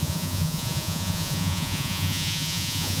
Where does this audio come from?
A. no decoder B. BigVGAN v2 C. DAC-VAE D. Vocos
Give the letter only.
D